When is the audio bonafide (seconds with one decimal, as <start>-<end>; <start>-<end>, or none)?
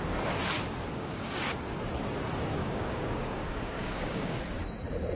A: 0.0-0.9; 1.4-2.6; 4.4-5.2